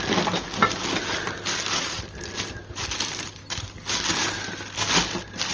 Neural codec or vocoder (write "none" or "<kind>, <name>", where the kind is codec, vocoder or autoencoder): none